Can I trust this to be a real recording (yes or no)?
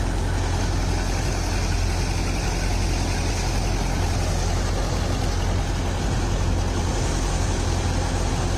yes